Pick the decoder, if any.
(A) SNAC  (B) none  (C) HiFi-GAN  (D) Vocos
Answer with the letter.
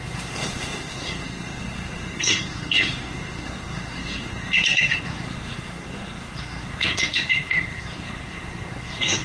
A